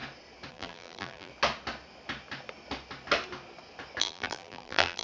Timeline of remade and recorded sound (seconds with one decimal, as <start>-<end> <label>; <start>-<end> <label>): 0.0-0.5 recorded; 0.5-1.3 remade; 1.3-4.0 recorded; 4.0-5.0 remade